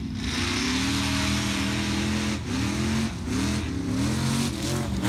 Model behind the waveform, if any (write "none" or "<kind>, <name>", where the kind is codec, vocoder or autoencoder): none